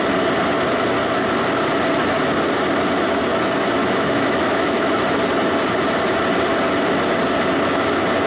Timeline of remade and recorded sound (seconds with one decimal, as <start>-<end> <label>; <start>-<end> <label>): 0.0-3.8 recorded; 3.8-4.9 remade; 4.9-8.3 recorded